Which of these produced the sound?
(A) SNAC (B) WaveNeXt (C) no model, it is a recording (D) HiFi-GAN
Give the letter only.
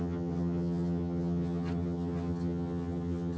D